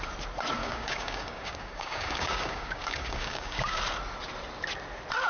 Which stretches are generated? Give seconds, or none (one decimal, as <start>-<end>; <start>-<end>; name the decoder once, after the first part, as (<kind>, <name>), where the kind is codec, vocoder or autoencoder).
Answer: 0.6-3.8 (codec, DAC)